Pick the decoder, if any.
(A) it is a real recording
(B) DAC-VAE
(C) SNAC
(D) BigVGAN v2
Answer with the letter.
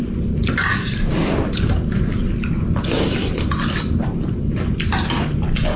D